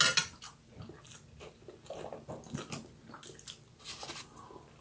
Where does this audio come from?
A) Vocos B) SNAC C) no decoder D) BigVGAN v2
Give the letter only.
C